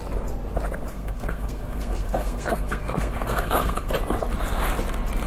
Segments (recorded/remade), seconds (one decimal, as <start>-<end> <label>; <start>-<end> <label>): 0.0-0.9 recorded; 0.9-3.9 remade; 3.9-5.3 recorded